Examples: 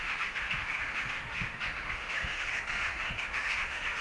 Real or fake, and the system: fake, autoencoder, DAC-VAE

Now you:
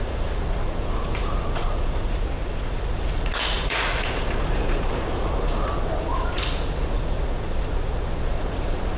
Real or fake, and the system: fake, vocoder, Vocos